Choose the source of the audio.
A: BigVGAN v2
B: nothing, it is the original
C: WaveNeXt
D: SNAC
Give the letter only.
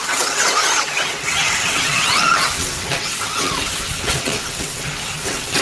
C